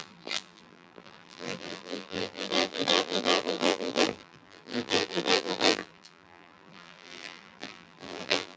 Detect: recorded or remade remade